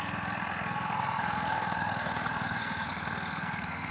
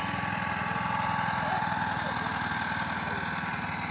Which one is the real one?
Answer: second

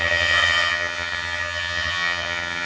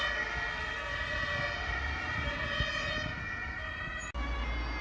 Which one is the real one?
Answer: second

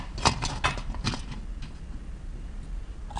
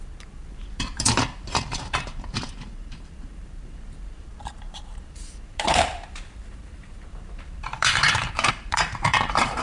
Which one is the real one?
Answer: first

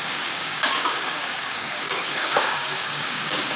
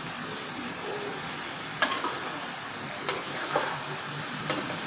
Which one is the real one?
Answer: second